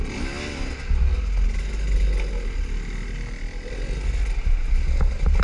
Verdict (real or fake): real